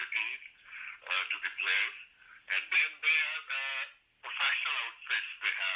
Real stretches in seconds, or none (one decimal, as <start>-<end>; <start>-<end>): 0.0-5.8